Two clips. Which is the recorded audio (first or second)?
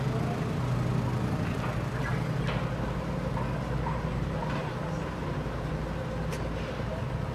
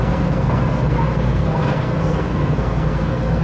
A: first